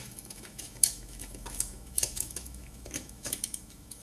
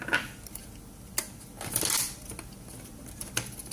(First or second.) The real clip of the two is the second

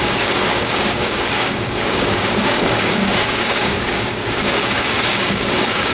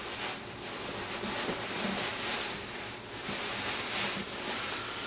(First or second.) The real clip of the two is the second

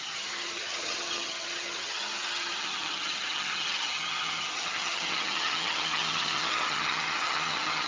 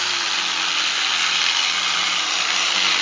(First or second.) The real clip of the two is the second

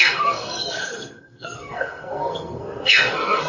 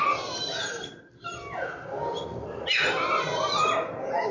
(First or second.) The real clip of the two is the second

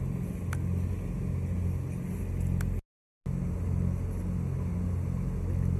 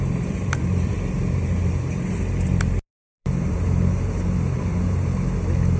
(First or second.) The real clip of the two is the first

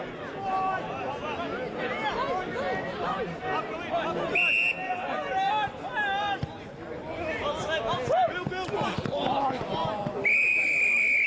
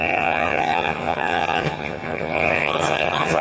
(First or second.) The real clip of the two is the first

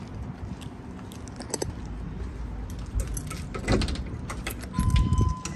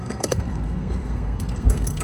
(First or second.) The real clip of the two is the first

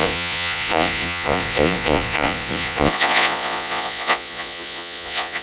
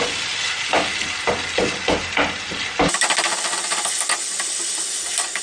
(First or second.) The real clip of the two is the second